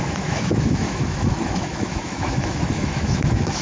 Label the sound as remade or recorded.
remade